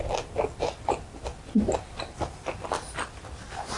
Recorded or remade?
recorded